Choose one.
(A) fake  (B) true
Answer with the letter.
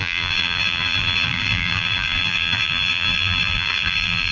A